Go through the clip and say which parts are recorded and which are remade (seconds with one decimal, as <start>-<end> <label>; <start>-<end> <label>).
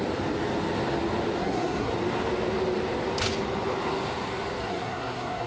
0.0-1.4 recorded; 1.4-1.9 remade; 1.9-4.6 recorded; 4.6-5.5 remade